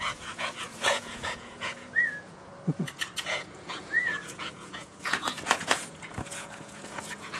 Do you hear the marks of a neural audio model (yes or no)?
yes